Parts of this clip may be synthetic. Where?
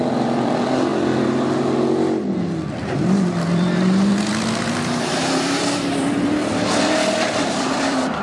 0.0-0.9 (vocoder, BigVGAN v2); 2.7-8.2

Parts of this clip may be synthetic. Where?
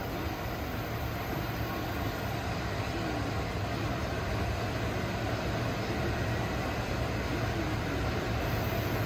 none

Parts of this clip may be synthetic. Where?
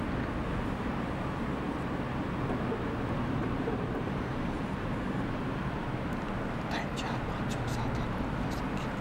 3.4-5.2 (vocoder, BigVGAN v2)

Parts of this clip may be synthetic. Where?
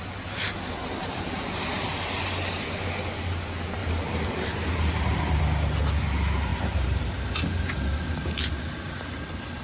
1.1-1.9 (vocoder, BigVGAN v2); 3.8-5.4; 6.5-7.4